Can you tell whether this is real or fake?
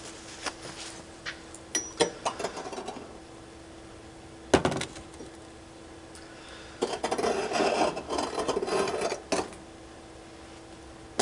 real